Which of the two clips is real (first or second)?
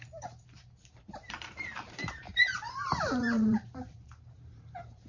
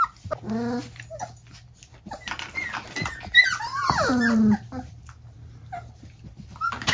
second